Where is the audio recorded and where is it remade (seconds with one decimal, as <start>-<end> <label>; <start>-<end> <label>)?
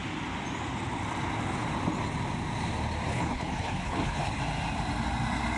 0.0-3.1 recorded; 3.1-4.4 remade; 4.4-5.6 recorded